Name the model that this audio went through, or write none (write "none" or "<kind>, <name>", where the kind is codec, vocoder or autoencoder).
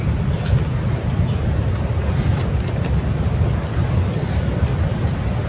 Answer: none